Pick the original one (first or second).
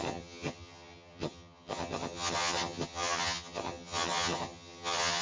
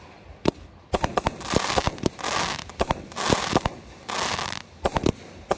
second